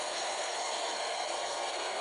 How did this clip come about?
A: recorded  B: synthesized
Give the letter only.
B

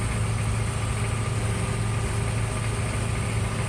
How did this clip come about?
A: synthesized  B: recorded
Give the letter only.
B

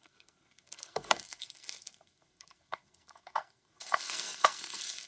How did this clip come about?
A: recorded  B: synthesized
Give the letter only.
B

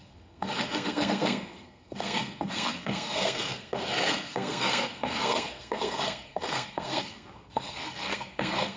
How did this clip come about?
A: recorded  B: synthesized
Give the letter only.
B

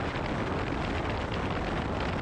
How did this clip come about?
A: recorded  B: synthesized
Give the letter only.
A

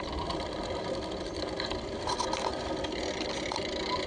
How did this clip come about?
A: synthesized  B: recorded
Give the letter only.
B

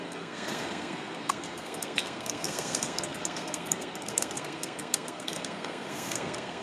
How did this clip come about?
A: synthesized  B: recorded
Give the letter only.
A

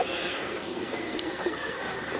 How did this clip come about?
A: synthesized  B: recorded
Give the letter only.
A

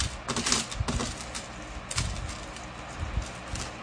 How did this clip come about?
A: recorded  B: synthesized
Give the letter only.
A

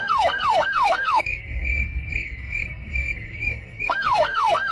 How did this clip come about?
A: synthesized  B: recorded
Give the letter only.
A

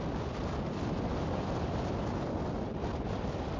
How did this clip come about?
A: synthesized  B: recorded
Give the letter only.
B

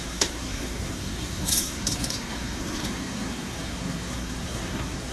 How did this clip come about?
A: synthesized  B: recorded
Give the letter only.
A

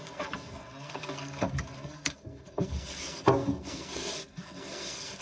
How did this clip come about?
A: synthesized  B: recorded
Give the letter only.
A